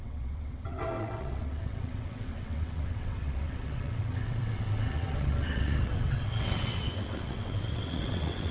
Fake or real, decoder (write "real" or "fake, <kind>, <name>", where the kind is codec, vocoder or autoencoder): fake, vocoder, WaveNeXt